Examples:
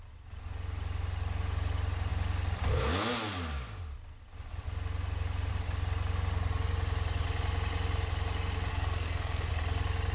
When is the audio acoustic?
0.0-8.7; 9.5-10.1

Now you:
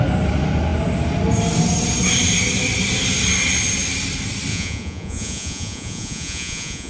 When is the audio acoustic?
0.0-4.5

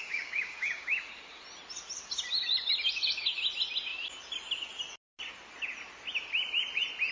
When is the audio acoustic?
1.1-7.1

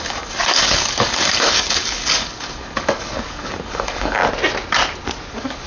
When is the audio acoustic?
4.2-5.3

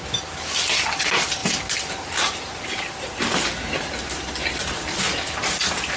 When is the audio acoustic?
0.0-1.4; 5.0-6.0